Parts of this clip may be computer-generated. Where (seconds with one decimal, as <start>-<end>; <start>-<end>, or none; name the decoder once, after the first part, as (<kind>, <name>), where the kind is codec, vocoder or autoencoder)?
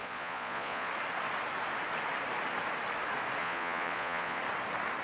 0.0-0.9 (vocoder, Vocos); 3.4-4.4